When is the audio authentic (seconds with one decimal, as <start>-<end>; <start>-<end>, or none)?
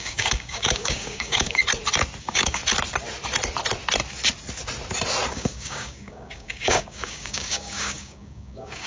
1.6-2.2; 2.6-5.3